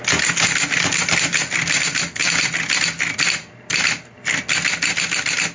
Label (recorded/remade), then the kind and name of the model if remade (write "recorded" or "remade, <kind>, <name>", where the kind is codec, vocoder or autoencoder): recorded